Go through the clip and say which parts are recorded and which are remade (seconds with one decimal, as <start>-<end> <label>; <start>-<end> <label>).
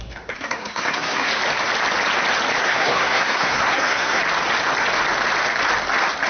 0.0-1.3 remade; 1.3-2.6 recorded; 2.6-4.2 remade; 4.2-6.3 recorded